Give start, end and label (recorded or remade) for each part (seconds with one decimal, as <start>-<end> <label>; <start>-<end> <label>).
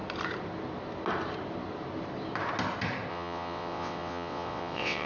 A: 0.0-3.1 recorded; 3.1-5.1 remade